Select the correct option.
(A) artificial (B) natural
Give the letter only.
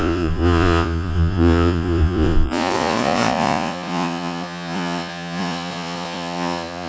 A